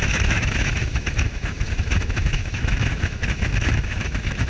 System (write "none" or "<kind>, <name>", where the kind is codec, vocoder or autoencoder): autoencoder, DAC-VAE